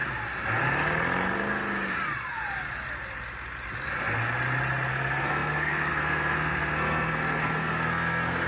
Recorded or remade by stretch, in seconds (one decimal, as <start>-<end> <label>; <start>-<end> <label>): 0.0-4.9 recorded; 4.9-8.5 remade